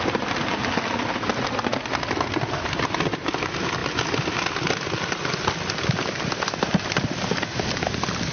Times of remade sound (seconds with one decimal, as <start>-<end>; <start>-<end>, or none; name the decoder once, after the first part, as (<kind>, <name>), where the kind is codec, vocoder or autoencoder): none